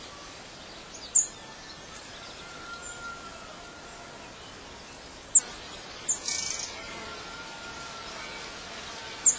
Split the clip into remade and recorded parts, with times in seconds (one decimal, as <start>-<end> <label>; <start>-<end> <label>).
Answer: 0.0-9.4 recorded